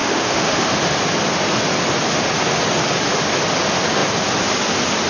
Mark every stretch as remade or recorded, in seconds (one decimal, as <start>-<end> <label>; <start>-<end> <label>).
0.0-0.7 remade; 0.7-5.1 recorded